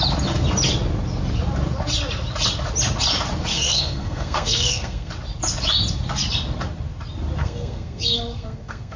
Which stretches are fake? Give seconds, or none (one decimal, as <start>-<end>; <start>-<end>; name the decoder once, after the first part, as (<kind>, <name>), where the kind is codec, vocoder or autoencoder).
3.5-5.1 (codec, SNAC); 7.4-9.0